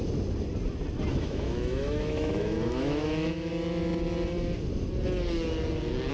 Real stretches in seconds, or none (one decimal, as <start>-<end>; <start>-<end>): 0.0-1.1; 3.5-6.1